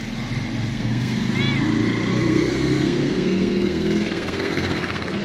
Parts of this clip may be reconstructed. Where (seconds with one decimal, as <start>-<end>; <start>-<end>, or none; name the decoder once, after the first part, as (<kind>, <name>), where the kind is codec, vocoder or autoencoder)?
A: 0.7-1.3 (codec, SNAC); 2.1-5.2

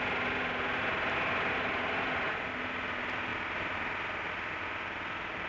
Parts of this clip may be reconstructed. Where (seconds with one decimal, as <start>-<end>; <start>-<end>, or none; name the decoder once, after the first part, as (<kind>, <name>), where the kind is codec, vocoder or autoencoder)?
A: none

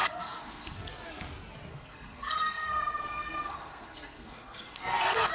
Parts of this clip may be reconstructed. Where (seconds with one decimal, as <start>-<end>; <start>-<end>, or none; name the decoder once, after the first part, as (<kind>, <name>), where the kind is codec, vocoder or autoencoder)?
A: 0.0-0.9 (codec, SNAC); 1.7-5.3